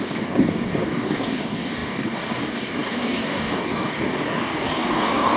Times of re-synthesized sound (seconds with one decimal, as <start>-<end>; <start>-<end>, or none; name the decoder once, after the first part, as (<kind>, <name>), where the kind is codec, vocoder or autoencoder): 0.0-5.4 (codec, DAC)

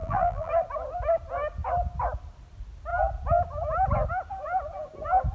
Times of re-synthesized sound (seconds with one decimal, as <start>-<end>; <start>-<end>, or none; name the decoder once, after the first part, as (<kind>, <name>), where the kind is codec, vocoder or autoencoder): 0.0-0.5 (vocoder, BigVGAN v2)

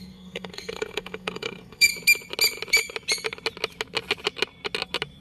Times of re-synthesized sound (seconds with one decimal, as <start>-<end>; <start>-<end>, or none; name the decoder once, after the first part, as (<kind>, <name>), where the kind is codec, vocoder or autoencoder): 0.0-1.9 (codec, SNAC)

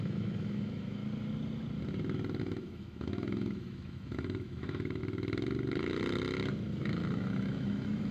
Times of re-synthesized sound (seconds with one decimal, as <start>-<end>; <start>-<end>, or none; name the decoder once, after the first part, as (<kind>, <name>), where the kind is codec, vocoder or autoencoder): 0.0-1.0 (autoencoder, DAC-VAE); 2.4-5.0; 6.8-8.1

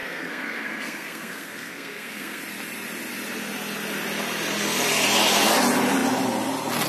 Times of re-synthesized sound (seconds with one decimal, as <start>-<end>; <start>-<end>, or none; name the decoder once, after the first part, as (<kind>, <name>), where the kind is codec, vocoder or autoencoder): 0.0-2.4 (codec, SNAC)

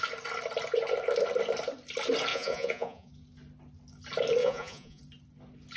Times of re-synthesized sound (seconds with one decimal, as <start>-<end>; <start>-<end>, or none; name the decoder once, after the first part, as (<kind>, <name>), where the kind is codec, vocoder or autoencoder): 2.3-3.1 (vocoder, Vocos); 4.4-5.0

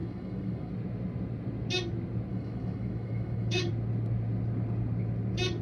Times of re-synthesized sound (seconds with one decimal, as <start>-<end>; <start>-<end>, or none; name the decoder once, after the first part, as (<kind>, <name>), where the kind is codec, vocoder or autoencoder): 0.0-0.7 (autoencoder, DAC-VAE); 2.3-3.7

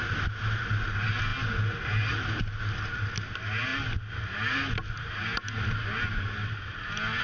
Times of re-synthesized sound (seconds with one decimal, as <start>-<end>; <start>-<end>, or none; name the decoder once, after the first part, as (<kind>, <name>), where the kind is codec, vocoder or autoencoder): none